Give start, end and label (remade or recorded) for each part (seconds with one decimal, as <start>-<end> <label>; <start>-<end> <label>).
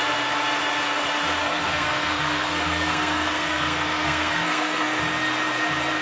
0.0-1.4 recorded; 1.4-5.0 remade; 5.0-6.0 recorded